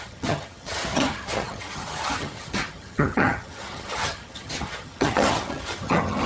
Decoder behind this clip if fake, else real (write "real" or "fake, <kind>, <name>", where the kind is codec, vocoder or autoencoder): fake, vocoder, HiFi-GAN